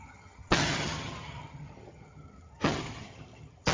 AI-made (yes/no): yes